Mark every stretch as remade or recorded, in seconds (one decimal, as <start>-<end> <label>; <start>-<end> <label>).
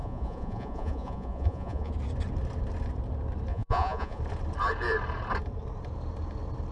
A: 0.0-1.9 remade; 1.9-3.5 recorded; 3.5-4.2 remade; 4.2-6.7 recorded